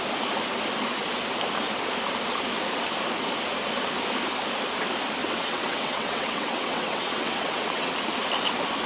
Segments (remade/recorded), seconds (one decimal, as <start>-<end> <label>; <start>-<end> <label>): 0.0-5.2 recorded; 5.2-7.9 remade; 7.9-8.9 recorded